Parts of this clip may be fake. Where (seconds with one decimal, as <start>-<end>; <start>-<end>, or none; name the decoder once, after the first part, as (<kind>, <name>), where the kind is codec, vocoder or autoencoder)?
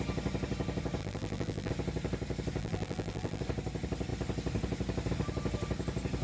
1.0-1.7 (vocoder, BigVGAN v2); 2.6-3.4